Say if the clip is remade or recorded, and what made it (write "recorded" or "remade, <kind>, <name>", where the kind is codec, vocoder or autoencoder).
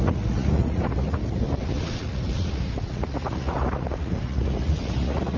remade, vocoder, Vocos